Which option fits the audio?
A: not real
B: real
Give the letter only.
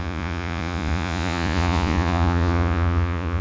A